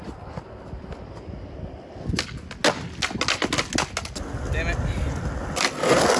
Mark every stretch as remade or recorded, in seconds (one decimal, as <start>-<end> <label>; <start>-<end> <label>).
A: 0.0-6.2 recorded